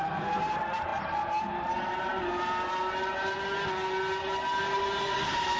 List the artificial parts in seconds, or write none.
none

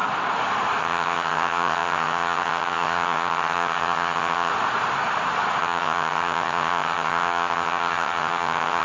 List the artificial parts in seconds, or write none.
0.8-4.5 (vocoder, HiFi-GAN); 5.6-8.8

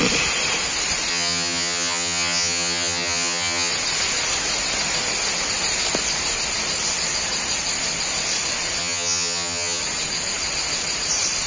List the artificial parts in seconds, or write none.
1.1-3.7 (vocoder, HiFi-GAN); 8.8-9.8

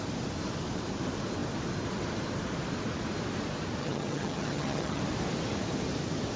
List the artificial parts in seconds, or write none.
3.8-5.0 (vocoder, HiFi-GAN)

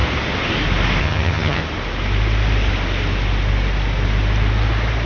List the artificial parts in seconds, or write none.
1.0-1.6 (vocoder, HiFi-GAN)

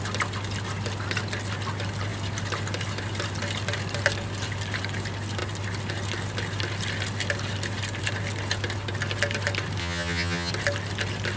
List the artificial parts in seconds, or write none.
9.8-10.5 (vocoder, HiFi-GAN)

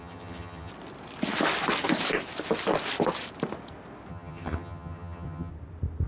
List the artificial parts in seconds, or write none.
0.0-0.7 (vocoder, HiFi-GAN); 4.1-5.5